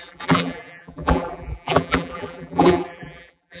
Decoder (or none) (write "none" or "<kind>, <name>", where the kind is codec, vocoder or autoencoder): vocoder, BigVGAN v2